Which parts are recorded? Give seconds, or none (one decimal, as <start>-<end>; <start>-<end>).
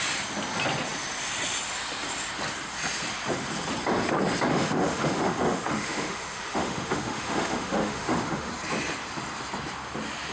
0.0-4.5; 8.5-10.3